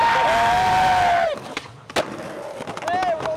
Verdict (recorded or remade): recorded